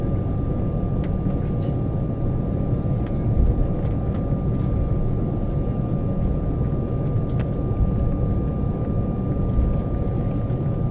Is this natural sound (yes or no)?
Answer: yes